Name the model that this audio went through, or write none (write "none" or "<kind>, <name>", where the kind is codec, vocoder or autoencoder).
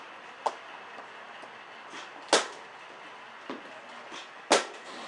none